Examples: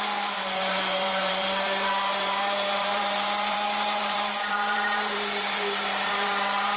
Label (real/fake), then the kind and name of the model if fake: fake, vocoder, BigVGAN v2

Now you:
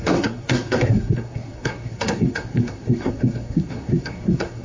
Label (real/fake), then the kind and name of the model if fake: fake, codec, SNAC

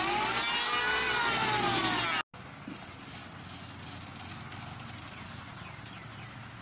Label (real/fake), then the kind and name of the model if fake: real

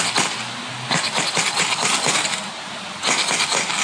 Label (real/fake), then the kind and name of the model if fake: real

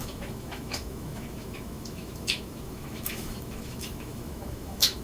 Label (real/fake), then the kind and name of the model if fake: fake, autoencoder, DAC-VAE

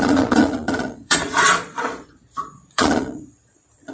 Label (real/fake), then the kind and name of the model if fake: fake, vocoder, Vocos